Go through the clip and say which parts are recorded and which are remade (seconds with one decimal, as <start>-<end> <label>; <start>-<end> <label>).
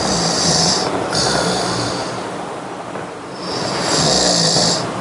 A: 0.0-5.0 recorded